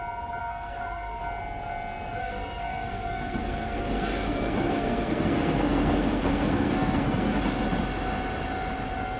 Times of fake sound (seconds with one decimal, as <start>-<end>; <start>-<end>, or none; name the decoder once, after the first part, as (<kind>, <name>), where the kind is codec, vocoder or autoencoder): 0.4-1.2 (codec, SNAC); 2.2-7.4